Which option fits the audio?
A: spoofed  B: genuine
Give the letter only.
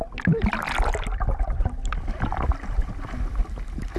B